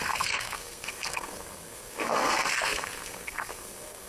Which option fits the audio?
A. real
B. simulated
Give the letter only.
B